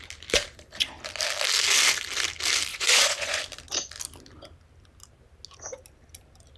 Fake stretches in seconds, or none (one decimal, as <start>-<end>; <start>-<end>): 2.7-3.4